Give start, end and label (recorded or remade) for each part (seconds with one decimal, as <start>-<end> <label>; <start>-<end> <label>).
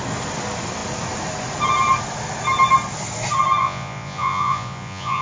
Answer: 0.0-3.6 recorded; 3.6-5.2 remade